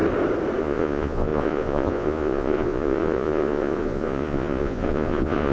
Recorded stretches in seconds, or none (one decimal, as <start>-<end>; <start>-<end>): 0.0-0.6